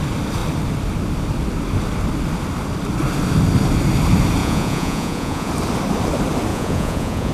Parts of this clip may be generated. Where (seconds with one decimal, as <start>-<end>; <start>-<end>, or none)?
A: 4.4-5.5; 6.5-7.3